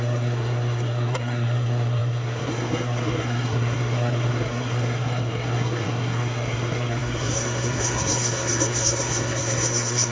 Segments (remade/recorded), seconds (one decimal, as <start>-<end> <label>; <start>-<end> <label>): 0.0-10.1 remade